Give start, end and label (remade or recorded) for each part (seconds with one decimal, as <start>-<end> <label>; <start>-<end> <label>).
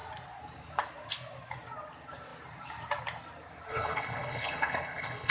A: 0.0-3.7 recorded; 3.7-5.3 remade